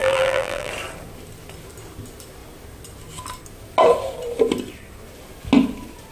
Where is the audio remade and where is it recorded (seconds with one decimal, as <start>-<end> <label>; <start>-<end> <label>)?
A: 0.0-0.7 remade; 0.7-6.1 recorded